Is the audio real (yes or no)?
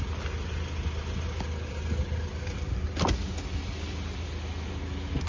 yes